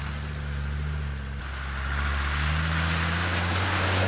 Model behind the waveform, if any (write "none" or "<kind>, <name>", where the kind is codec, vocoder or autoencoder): none